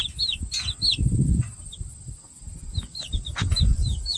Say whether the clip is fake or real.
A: real